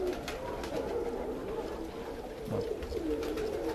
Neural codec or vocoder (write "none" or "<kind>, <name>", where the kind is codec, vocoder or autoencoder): none